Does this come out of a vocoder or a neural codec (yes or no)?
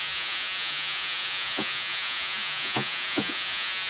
yes